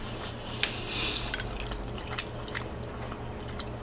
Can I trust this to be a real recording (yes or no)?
yes